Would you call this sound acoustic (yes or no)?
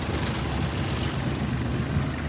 yes